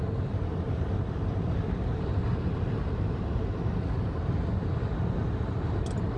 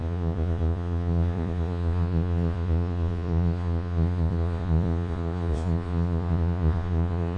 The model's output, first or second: second